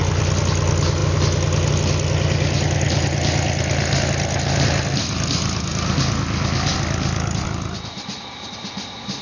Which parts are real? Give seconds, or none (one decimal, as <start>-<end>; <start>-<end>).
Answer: 0.0-9.2